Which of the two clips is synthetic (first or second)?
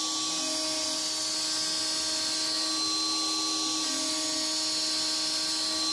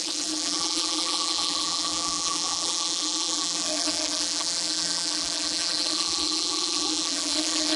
second